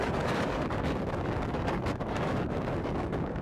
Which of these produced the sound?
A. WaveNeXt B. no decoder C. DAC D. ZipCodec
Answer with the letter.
C